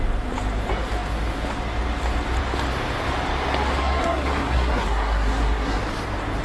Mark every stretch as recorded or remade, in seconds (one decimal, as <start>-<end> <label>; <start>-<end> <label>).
0.0-3.8 recorded; 3.8-5.8 remade; 5.8-6.4 recorded